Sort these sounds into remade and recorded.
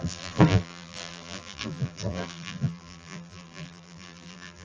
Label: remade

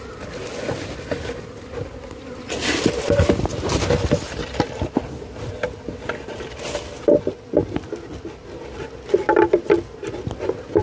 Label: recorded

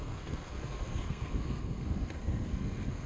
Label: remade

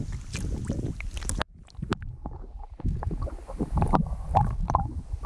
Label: recorded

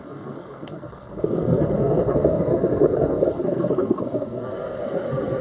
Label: remade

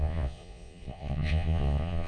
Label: remade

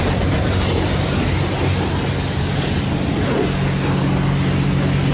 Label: recorded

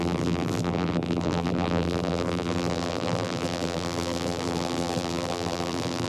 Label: remade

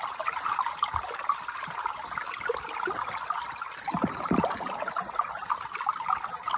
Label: recorded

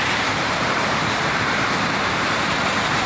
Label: remade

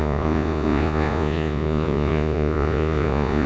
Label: remade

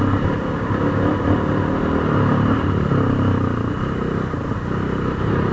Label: recorded